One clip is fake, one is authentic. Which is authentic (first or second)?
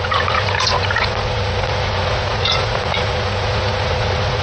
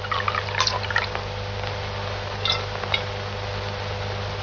second